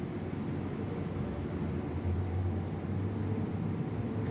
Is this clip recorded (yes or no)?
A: yes